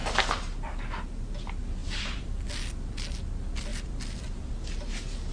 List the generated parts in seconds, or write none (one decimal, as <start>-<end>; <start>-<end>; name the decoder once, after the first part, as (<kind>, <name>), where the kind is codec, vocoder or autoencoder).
0.0-0.8 (vocoder, BigVGAN v2); 1.8-2.5; 3.7-4.5